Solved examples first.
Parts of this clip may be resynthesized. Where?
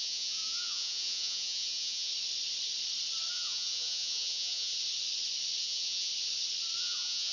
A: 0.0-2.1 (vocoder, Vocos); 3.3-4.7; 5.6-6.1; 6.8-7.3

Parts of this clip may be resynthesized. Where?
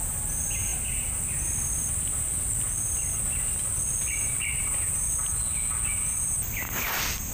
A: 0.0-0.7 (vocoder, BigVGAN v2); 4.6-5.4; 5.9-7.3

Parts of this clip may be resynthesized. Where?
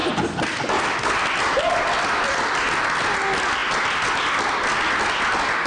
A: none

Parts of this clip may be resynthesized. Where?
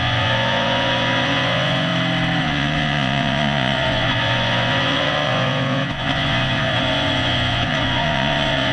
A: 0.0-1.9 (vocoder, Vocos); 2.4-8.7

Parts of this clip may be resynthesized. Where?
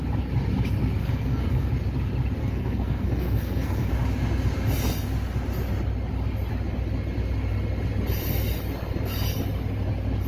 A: 1.0-1.7 (codec, SNAC); 2.4-3.9